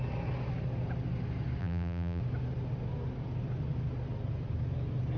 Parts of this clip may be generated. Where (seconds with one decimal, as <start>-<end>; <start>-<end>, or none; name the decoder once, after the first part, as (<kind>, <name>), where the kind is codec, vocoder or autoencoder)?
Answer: 1.6-2.2 (vocoder, BigVGAN v2)